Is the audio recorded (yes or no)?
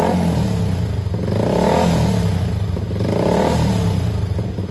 yes